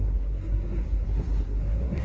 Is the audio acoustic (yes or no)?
no